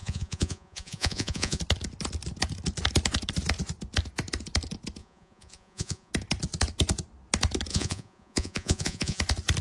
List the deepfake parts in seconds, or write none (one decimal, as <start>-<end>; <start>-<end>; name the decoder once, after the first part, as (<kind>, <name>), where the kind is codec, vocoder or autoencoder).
0.0-1.6 (vocoder, Vocos); 5.0-6.1; 7.7-9.2